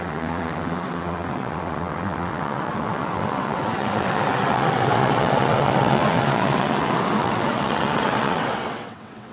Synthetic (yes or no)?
yes